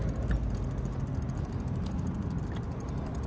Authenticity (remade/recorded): recorded